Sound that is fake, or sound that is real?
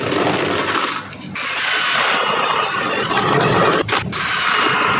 real